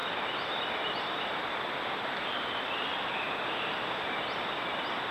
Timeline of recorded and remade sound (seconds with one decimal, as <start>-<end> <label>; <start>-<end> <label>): 0.0-3.1 remade; 3.1-5.1 recorded